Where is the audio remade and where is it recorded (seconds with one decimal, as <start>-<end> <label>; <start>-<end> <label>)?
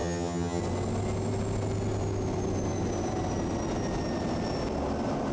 0.0-0.6 remade; 0.6-5.3 recorded